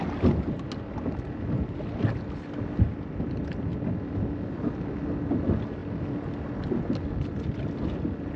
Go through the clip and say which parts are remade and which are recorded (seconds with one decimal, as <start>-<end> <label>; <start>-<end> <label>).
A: 0.0-8.4 recorded